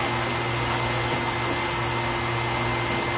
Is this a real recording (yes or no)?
yes